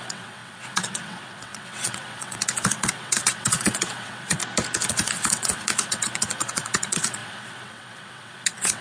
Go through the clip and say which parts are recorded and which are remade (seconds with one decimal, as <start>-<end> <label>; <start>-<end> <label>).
0.0-4.4 remade; 4.4-4.9 recorded; 4.9-8.8 remade